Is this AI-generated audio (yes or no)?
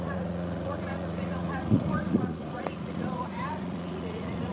yes